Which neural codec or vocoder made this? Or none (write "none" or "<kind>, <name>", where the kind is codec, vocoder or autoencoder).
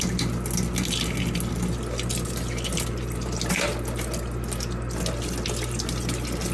none